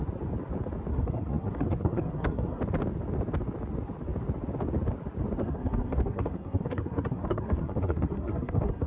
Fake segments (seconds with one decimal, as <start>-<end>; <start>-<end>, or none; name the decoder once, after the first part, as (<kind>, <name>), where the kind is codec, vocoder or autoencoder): 0.9-2.6 (codec, SNAC); 5.4-8.9